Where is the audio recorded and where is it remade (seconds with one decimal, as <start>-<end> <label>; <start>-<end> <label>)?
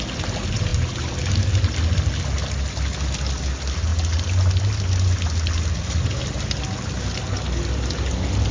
0.0-8.5 recorded